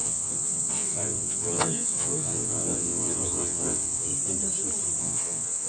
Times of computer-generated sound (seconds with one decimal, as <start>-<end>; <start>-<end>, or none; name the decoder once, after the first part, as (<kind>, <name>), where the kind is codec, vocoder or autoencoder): 0.0-4.1 (vocoder, WaveNeXt); 5.0-5.7